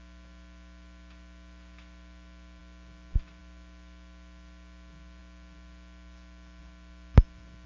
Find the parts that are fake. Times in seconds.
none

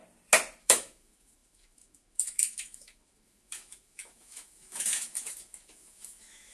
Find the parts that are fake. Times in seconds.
0.6-6.5 (autoencoder, DAC-VAE)

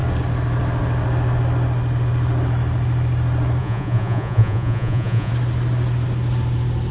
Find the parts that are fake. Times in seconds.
3.6-5.3 (vocoder, Vocos)

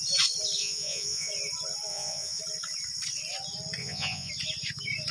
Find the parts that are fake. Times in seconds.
0.6-1.3 (vocoder, Vocos); 1.9-2.4; 3.8-4.3

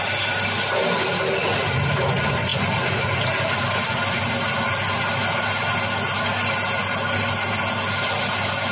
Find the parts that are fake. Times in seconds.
none